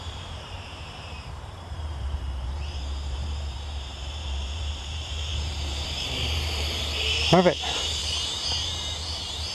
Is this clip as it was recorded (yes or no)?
no